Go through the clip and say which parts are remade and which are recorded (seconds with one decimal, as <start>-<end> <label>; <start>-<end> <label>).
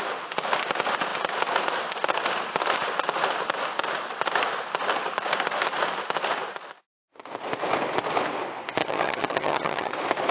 0.0-8.8 recorded; 8.8-9.9 remade; 9.9-10.3 recorded